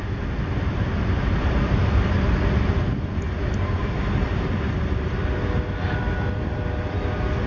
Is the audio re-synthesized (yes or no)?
no